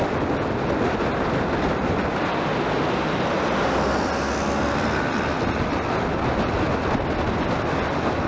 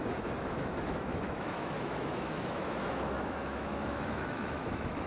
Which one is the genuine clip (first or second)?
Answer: first